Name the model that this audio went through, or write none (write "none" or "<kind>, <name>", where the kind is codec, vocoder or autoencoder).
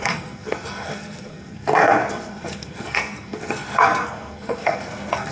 codec, SNAC